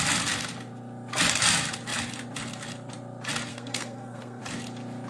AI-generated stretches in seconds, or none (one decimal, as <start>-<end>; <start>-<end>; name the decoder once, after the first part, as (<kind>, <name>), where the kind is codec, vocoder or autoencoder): 3.5-4.4 (codec, SNAC)